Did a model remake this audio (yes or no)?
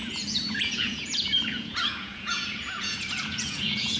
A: yes